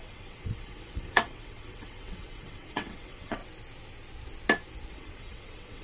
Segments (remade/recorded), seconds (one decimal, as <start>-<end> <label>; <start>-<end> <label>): 0.0-3.4 remade; 3.4-4.9 recorded; 4.9-5.8 remade